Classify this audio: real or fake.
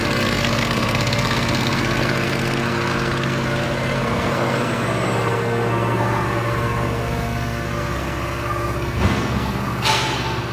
fake